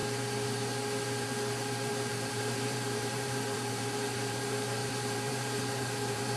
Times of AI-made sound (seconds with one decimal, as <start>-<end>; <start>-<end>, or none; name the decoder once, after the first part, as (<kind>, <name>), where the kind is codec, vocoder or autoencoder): 2.1-6.4 (vocoder, BigVGAN v2)